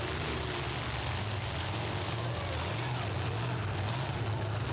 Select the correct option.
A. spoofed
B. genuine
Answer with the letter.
B